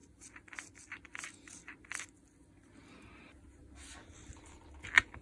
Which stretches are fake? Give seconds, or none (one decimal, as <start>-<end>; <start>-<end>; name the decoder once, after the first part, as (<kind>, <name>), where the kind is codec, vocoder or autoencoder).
none